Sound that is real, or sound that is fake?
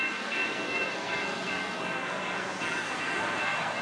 fake